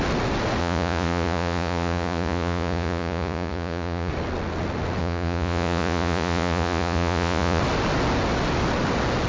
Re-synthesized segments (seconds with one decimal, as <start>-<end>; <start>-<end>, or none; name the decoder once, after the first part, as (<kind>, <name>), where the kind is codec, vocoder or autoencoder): 0.6-4.1 (vocoder, Vocos); 5.0-7.6